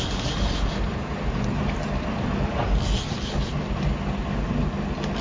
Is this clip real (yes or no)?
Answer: yes